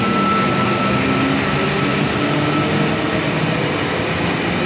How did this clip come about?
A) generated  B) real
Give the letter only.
B